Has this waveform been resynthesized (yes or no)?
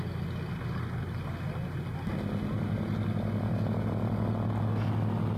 no